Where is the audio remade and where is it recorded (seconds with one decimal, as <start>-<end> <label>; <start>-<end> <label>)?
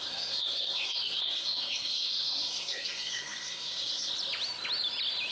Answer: 0.0-4.1 remade; 4.1-5.3 recorded